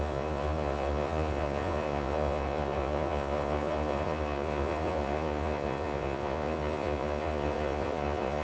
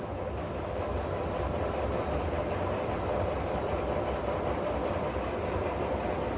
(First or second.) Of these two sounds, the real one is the second